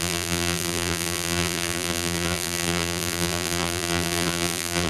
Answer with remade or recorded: remade